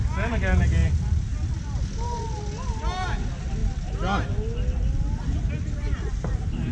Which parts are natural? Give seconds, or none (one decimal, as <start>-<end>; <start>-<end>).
0.0-6.7